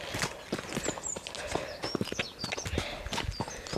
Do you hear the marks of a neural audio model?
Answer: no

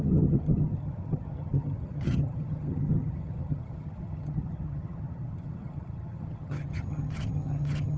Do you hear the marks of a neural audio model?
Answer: yes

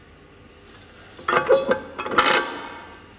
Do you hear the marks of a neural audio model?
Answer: no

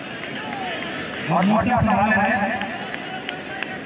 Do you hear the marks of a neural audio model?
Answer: no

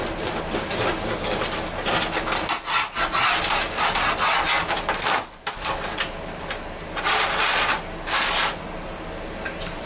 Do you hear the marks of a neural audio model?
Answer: no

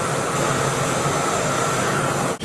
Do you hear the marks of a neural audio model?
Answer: no